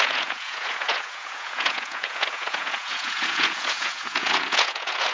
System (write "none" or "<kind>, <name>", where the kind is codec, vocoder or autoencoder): vocoder, Vocos